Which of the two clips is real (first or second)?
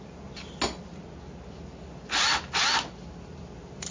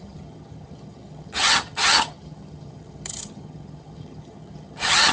first